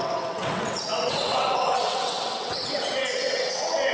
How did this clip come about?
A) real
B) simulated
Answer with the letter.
B